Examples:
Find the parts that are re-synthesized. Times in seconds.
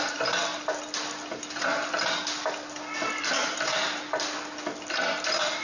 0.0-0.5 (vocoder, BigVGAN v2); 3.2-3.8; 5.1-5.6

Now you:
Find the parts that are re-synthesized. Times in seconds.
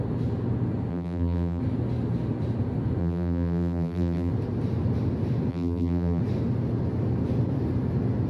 0.9-1.6 (vocoder, BigVGAN v2); 3.0-4.3; 5.5-6.2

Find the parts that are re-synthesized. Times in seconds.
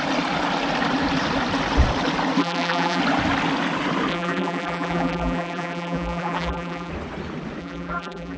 2.4-3.0 (vocoder, BigVGAN v2); 4.1-6.9; 7.6-8.4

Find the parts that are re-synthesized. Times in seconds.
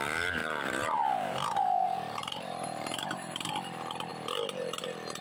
0.4-3.5 (vocoder, BigVGAN v2)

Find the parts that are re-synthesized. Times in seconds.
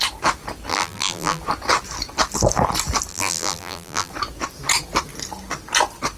0.7-1.4 (vocoder, BigVGAN v2); 3.1-4.1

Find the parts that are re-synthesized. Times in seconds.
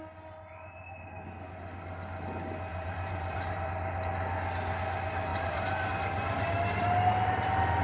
2.7-3.7 (vocoder, BigVGAN v2); 5.3-5.9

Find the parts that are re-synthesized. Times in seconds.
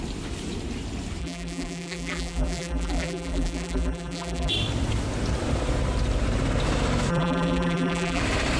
1.2-4.5 (vocoder, BigVGAN v2); 7.1-8.2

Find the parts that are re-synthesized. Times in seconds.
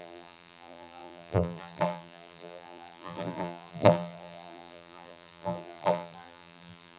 0.0-7.0 (vocoder, BigVGAN v2)